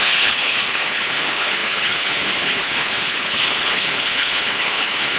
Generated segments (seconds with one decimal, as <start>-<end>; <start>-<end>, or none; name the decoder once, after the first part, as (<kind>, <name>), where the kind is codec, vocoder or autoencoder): 0.0-5.2 (codec, HILCodec)